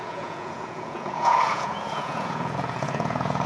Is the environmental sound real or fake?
fake